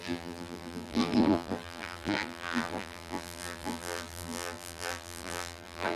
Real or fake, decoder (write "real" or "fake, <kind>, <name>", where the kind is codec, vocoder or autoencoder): fake, vocoder, BigVGAN v2